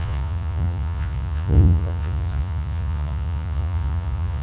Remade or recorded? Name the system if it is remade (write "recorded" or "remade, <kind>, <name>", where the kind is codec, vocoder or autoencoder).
remade, vocoder, Vocos